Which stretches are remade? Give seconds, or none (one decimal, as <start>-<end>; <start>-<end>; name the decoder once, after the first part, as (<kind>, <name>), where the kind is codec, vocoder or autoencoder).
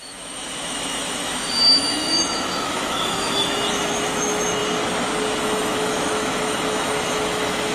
0.0-4.6 (autoencoder, DAC-VAE); 5.4-7.7